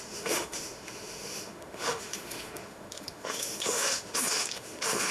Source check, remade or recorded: remade